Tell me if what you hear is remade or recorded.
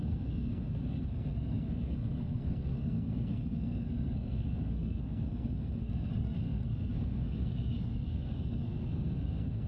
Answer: remade